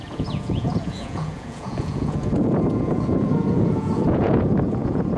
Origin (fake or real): fake